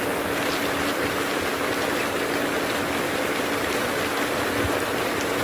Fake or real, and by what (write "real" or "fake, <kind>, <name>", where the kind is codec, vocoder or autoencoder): real